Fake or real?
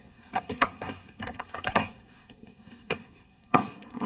fake